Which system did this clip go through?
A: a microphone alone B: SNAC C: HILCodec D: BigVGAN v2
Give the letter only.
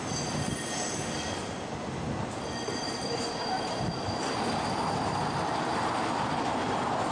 A